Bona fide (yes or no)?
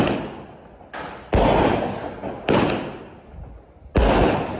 yes